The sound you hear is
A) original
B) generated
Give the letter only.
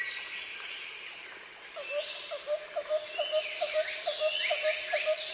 A